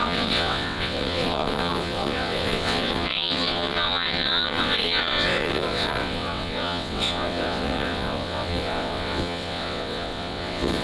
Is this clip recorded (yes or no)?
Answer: no